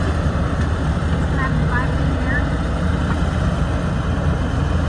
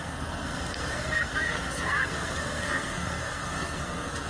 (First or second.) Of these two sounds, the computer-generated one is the second